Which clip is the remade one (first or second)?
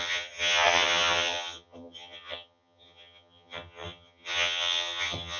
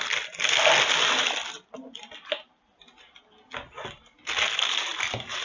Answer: first